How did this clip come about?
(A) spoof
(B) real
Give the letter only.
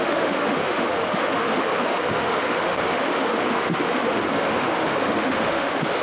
A